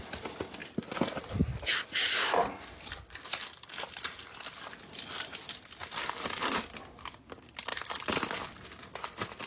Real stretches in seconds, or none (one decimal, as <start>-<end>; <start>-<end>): 0.0-0.6; 4.2-7.7